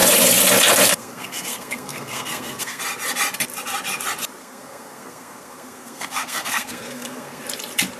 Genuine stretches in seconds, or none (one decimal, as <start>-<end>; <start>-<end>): 0.0-0.9; 2.8-4.4; 7.4-8.0

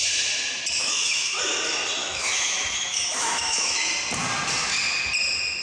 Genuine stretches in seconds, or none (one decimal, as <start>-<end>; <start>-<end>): 0.0-0.8; 1.4-2.0; 3.9-5.6